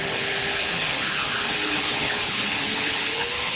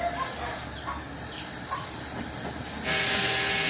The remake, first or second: first